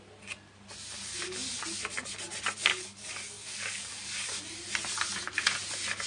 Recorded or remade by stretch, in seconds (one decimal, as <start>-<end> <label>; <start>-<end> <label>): 0.0-1.1 recorded; 1.1-1.6 remade; 1.6-2.7 recorded; 2.7-4.4 remade; 4.4-6.1 recorded